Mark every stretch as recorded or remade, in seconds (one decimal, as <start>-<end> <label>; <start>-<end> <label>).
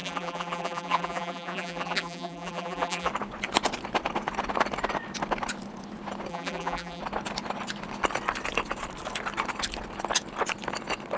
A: 0.0-3.1 remade; 3.1-6.3 recorded; 6.3-7.0 remade; 7.0-11.2 recorded